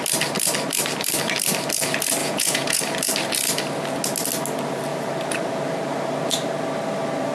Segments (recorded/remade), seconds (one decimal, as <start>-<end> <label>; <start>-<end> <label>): 0.0-2.2 recorded; 2.2-2.8 remade; 2.8-7.3 recorded